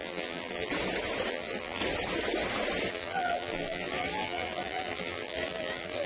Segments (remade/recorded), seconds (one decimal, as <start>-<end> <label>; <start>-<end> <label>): 0.0-0.7 remade; 0.7-1.3 recorded; 1.3-1.8 remade; 1.8-2.9 recorded; 2.9-6.1 remade